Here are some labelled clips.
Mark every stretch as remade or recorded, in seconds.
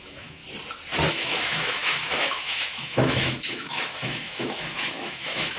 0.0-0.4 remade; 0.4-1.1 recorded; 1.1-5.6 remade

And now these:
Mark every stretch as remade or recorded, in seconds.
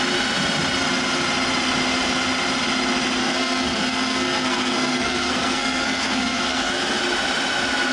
0.0-3.2 recorded; 3.2-7.0 remade; 7.0-7.9 recorded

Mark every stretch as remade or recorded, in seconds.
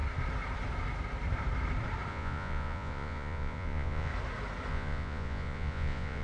0.0-2.1 recorded; 2.1-4.1 remade; 4.1-4.7 recorded; 4.7-6.2 remade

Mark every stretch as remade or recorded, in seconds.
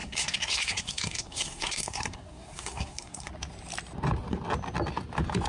0.0-3.3 remade; 3.3-5.5 recorded